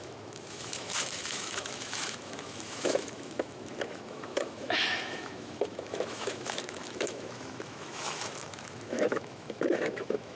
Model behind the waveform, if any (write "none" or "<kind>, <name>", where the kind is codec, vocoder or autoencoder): autoencoder, DAC-VAE